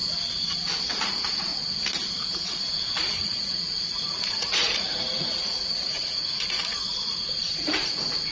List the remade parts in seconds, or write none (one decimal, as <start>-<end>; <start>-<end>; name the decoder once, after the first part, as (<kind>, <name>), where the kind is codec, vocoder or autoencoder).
1.1-1.5 (vocoder, Vocos); 2.1-8.3